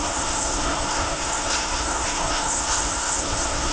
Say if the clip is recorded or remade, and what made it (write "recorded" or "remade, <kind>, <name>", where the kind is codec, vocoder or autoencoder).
remade, codec, SNAC